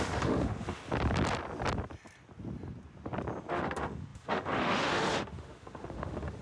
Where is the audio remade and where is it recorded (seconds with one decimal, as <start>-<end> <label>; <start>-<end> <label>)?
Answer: 0.0-0.8 remade; 0.8-3.5 recorded; 3.5-6.4 remade